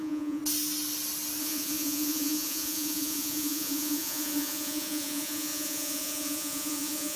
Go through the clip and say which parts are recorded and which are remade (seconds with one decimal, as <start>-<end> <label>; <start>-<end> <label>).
0.0-0.4 remade; 0.4-1.4 recorded; 1.4-7.2 remade